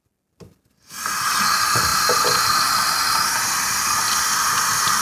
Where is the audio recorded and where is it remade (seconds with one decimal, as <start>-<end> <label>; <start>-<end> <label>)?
0.0-5.0 recorded